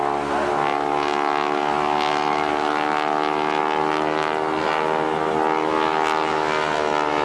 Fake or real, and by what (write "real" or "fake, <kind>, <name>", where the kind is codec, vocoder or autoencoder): real